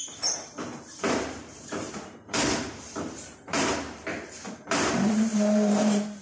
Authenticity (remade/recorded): remade